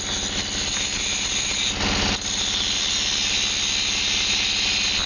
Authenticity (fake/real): real